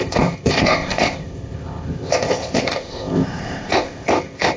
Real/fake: fake